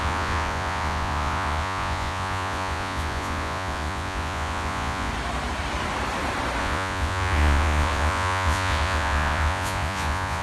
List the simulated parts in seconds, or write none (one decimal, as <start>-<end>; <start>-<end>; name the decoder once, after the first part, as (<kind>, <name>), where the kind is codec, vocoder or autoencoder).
0.0-5.1 (vocoder, Vocos); 6.6-10.4